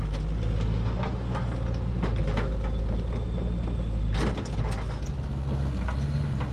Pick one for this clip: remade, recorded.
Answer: recorded